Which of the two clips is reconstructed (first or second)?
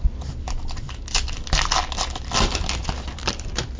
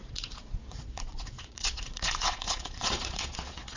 second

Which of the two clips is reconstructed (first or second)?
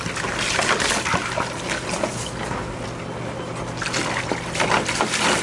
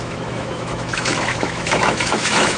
second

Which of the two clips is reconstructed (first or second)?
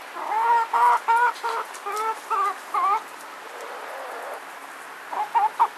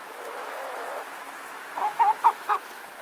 second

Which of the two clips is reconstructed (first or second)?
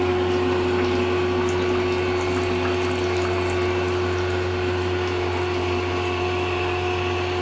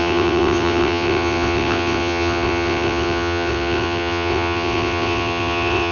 second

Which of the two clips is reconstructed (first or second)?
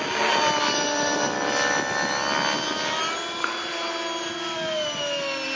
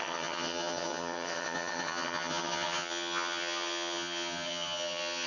second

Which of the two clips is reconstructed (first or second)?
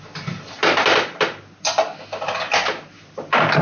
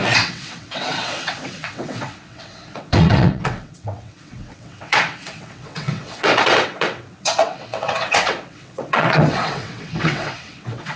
second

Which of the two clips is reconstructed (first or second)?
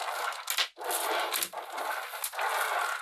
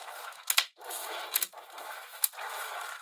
second